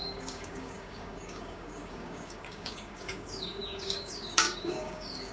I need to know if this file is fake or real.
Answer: fake